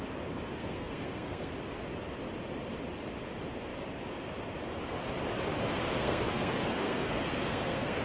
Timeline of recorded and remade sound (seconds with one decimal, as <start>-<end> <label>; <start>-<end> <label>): 0.0-0.6 recorded; 0.6-1.5 remade; 1.5-6.0 recorded; 6.0-8.0 remade